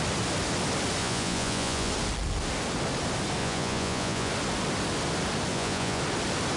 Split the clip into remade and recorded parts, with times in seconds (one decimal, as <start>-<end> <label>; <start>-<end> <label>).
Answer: 0.0-1.0 recorded; 1.0-1.9 remade; 1.9-3.4 recorded; 3.4-4.3 remade; 4.3-5.5 recorded; 5.5-6.0 remade; 6.0-6.6 recorded